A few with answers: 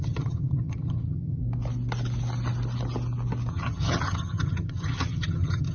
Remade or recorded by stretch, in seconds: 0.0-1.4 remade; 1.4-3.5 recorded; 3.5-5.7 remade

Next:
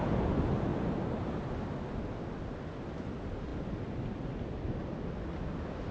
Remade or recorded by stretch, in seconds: 0.0-5.9 recorded

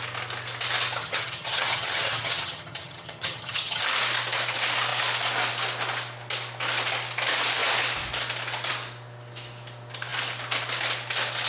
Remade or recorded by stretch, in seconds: 0.0-1.0 recorded; 1.0-3.8 remade; 3.8-11.5 recorded

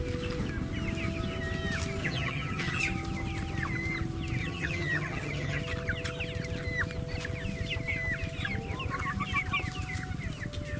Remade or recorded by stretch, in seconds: 0.0-2.0 recorded; 2.0-2.8 remade; 2.8-4.4 recorded; 4.4-5.6 remade; 5.6-10.8 recorded

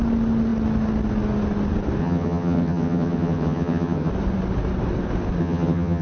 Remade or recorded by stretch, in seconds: 0.0-2.0 recorded; 2.0-4.1 remade; 4.1-5.4 recorded; 5.4-6.0 remade

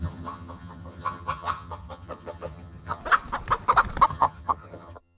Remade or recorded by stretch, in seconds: 0.0-3.0 remade; 3.0-4.1 recorded; 4.1-5.2 remade

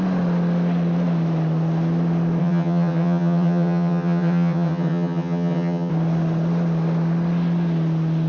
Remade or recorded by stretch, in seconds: 0.0-2.4 recorded; 2.4-5.9 remade; 5.9-8.3 recorded

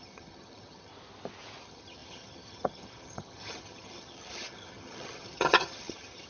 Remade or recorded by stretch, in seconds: 0.0-0.9 remade; 0.9-1.6 recorded; 1.6-6.3 remade